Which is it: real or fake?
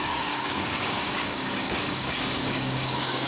fake